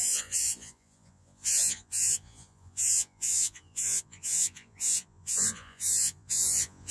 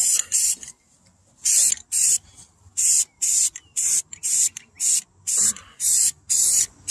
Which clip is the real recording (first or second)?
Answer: second